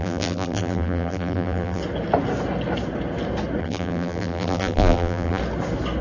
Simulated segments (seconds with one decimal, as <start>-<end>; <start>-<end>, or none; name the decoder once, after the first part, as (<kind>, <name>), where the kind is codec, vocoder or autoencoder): 0.0-1.8 (vocoder, BigVGAN v2); 3.6-5.4